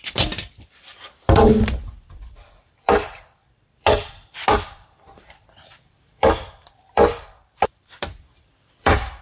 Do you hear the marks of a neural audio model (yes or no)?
yes